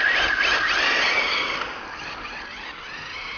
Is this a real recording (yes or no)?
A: yes